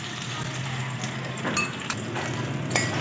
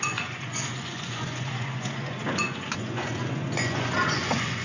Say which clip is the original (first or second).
first